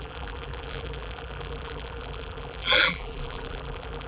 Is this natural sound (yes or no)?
no